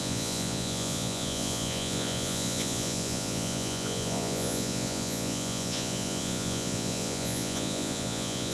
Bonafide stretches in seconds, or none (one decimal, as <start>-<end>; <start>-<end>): none